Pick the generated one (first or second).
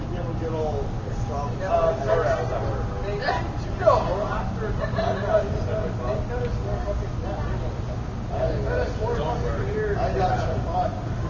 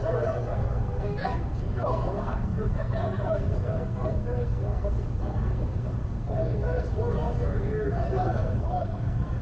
second